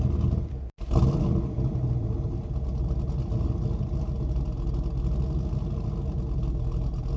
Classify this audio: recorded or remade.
recorded